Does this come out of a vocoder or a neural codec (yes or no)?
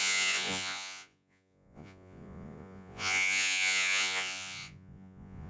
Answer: yes